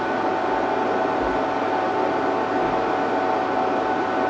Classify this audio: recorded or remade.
recorded